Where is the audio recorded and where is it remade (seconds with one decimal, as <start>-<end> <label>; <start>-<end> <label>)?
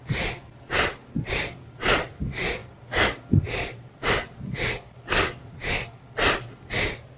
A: 0.0-7.2 recorded